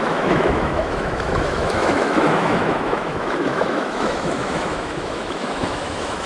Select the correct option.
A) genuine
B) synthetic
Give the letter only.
B